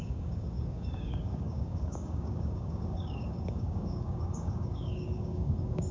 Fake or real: fake